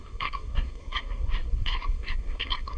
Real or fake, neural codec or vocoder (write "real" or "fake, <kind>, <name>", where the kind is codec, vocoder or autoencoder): fake, codec, SNAC